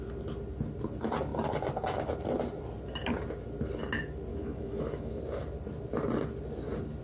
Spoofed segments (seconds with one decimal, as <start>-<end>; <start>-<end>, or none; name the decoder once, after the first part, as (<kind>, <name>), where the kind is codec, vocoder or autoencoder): 4.3-5.2 (autoencoder, DAC-VAE)